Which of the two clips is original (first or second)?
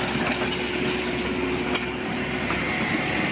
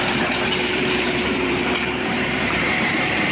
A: first